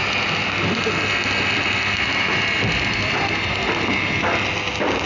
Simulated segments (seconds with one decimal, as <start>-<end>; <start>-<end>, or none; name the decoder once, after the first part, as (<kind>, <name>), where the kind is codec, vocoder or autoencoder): none